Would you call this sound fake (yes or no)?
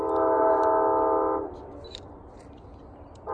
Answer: no